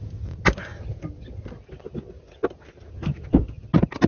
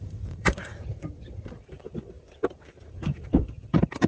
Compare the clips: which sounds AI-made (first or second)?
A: second